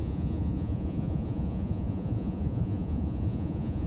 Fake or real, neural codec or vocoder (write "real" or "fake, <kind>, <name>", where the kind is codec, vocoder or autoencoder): fake, vocoder, Vocos